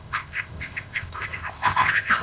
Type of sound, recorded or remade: remade